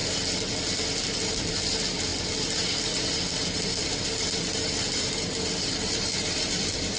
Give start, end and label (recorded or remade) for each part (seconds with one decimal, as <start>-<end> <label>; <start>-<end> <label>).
0.0-1.3 recorded; 1.3-7.0 remade